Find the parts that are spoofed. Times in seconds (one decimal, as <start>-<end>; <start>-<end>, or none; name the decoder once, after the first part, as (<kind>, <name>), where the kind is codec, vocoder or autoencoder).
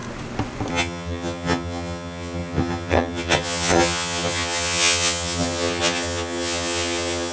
0.7-7.3 (vocoder, HiFi-GAN)